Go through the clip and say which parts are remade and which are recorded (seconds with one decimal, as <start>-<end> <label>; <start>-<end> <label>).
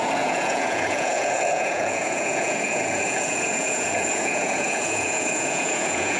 0.0-6.2 remade